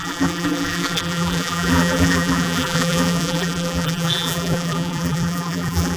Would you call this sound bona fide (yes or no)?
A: no